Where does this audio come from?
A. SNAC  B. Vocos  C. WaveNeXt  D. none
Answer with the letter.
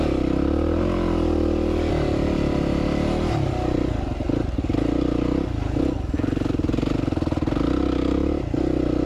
D